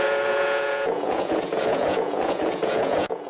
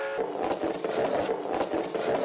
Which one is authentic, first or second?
second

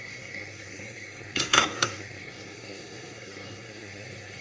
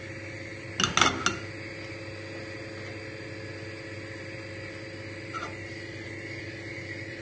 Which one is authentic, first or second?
second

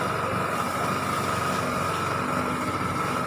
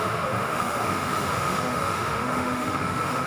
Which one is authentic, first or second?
first